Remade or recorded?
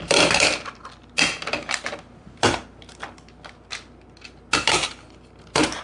recorded